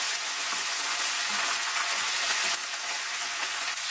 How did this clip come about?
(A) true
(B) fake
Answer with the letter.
B